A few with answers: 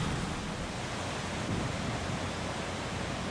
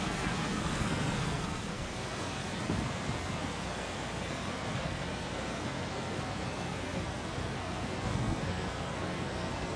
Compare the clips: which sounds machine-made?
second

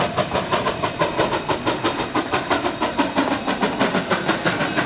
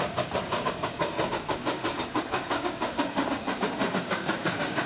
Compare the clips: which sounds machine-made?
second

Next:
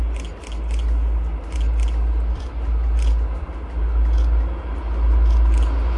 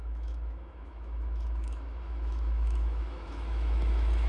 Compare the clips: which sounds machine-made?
second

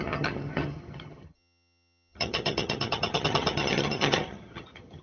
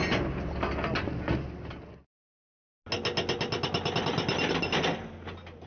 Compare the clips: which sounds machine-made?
first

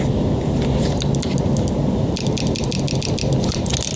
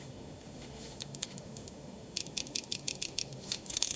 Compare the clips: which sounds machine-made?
second